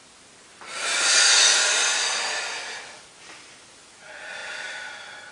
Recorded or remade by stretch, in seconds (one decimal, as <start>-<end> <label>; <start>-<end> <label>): 0.0-5.3 recorded